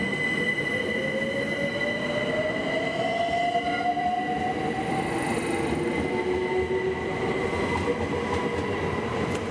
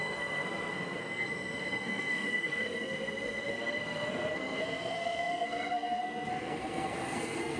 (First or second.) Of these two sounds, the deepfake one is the second